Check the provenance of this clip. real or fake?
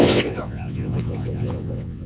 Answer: fake